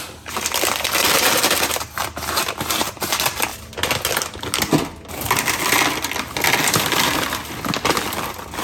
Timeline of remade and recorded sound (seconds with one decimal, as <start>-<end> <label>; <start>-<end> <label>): 0.0-8.6 recorded